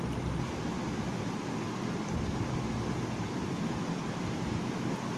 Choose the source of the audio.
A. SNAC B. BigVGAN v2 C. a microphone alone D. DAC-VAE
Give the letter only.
C